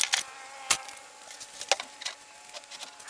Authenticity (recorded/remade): recorded